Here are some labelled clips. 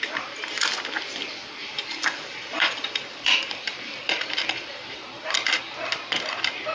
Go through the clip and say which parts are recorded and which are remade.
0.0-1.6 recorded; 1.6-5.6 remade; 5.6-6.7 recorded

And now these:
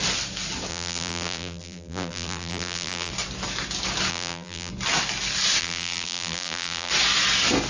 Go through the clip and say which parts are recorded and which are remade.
0.0-0.7 recorded; 0.7-3.1 remade; 3.1-4.1 recorded; 4.1-4.7 remade; 4.7-5.6 recorded; 5.6-6.9 remade; 6.9-7.7 recorded

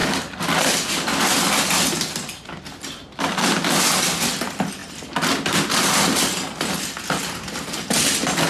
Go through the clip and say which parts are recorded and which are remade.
0.0-8.5 recorded

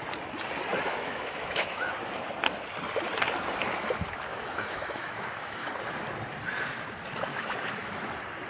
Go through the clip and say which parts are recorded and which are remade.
0.0-0.9 recorded; 0.9-1.9 remade; 1.9-4.3 recorded; 4.3-5.7 remade; 5.7-7.3 recorded; 7.3-8.1 remade; 8.1-8.5 recorded

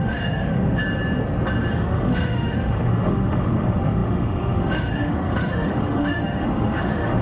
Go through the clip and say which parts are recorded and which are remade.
0.0-0.8 remade; 0.8-1.7 recorded; 1.7-7.2 remade

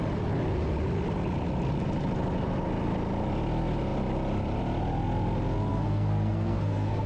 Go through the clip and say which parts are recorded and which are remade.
0.0-5.7 recorded; 5.7-7.1 remade

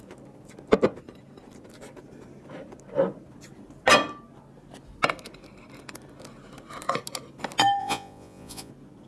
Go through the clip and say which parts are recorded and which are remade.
0.0-7.8 recorded; 7.8-8.7 remade; 8.7-9.1 recorded